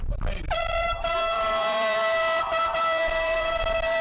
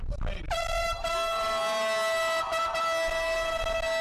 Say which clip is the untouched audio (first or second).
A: second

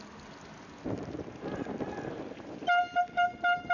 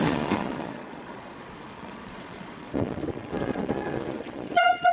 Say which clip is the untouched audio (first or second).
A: first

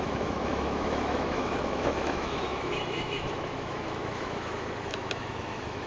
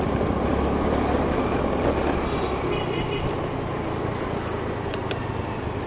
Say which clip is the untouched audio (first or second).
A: second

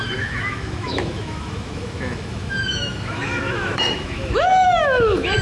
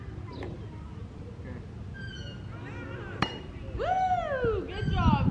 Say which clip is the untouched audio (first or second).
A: second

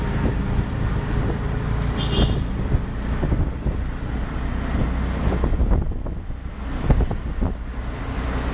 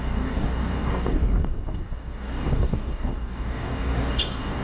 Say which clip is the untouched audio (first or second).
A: first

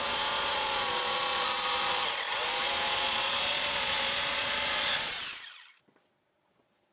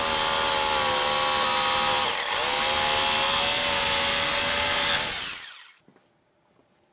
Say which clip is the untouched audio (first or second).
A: second